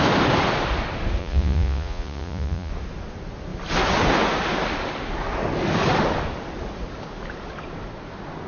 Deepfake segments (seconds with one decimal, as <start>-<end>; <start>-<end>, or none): 1.2-2.7

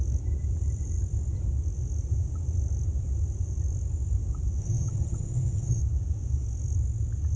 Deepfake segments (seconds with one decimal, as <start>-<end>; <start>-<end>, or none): 4.6-5.8